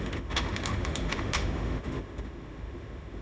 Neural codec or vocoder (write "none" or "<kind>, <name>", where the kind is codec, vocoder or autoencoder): autoencoder, DAC-VAE